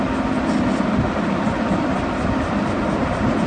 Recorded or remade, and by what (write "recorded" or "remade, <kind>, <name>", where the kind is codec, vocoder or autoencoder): recorded